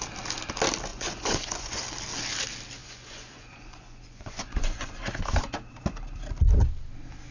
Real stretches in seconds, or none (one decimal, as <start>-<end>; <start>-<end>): 0.0-0.9; 1.8-2.8; 5.0-7.3